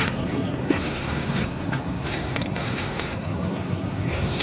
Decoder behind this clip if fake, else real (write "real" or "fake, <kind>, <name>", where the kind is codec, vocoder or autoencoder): fake, codec, SNAC